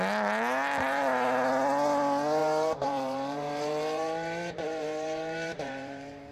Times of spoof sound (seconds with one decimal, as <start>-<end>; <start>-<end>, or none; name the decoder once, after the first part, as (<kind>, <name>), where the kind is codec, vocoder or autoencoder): 2.4-6.3 (vocoder, BigVGAN v2)